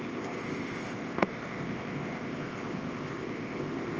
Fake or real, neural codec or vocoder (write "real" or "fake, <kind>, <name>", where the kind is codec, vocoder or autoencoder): fake, codec, ZipCodec